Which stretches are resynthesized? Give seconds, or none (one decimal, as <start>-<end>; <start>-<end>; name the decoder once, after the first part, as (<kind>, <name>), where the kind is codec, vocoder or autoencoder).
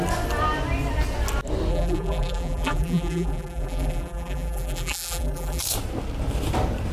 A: 1.7-5.6 (vocoder, BigVGAN v2)